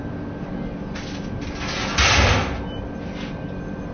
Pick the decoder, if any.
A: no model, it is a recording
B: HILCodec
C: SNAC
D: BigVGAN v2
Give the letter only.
A